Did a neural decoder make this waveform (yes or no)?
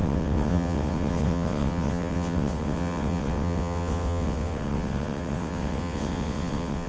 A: yes